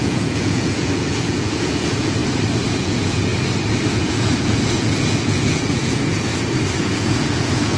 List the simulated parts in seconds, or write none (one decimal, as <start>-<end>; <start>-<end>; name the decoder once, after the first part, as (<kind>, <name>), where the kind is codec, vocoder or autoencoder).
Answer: 0.0-2.2 (vocoder, Vocos); 2.8-3.3; 3.9-6.3; 6.8-7.8